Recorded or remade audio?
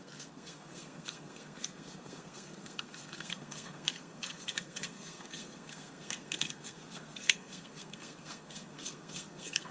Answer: remade